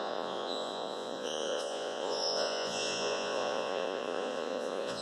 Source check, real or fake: fake